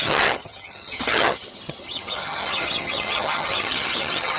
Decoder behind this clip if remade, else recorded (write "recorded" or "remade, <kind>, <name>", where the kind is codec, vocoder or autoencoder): remade, vocoder, HiFi-GAN